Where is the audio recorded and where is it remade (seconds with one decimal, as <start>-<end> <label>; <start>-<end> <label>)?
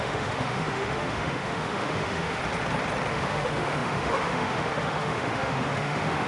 0.0-2.4 remade; 2.4-3.1 recorded; 3.1-6.3 remade